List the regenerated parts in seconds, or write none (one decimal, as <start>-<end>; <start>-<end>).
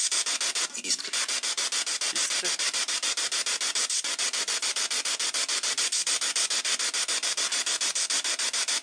none